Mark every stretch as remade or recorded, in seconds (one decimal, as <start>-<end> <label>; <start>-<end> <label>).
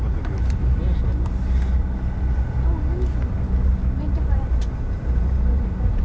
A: 0.0-1.1 remade; 1.1-4.0 recorded; 4.0-6.0 remade